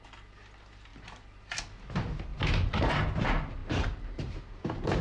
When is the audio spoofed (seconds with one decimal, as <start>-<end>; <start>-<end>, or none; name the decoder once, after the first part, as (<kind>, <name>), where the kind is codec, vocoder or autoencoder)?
2.3-3.0 (vocoder, BigVGAN v2); 3.6-5.0